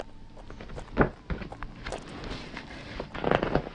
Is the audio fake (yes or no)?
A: no